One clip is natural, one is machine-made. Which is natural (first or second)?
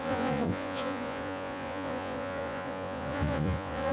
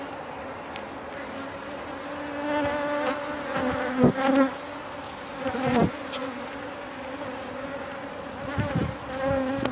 second